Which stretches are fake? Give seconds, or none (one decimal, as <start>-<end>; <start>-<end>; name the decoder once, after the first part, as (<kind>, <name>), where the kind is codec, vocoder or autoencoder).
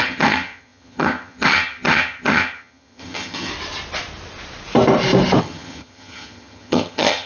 0.0-3.5 (vocoder, HiFi-GAN); 5.4-7.3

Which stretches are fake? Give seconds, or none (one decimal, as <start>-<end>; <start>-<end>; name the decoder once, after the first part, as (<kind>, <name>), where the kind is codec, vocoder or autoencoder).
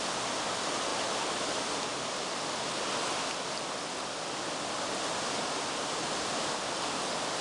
none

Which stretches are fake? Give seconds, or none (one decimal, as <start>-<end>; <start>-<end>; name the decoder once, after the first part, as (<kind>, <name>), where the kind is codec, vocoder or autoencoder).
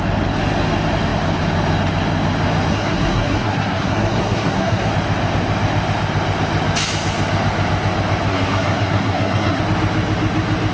2.7-4.9 (codec, SNAC); 8.3-9.6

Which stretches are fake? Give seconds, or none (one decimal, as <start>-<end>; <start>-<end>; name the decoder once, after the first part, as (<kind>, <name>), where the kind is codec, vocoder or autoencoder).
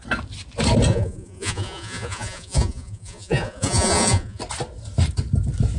0.9-4.4 (vocoder, Vocos)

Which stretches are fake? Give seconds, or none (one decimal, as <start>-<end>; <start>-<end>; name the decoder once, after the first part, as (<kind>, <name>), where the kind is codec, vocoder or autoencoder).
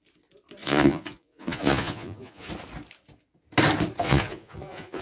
0.6-2.5 (vocoder, Vocos); 4.0-5.0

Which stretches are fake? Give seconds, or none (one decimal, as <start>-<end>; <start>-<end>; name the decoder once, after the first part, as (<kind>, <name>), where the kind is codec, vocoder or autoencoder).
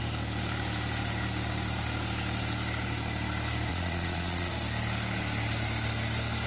3.7-4.5 (vocoder, Vocos)